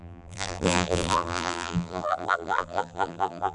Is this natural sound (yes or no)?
no